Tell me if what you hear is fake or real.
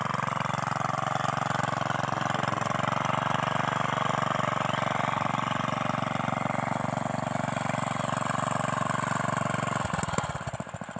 real